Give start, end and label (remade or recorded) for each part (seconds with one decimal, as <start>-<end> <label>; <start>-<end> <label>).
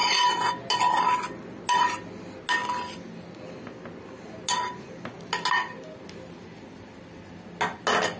0.0-8.2 recorded